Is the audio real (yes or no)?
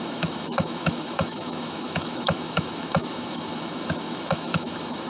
no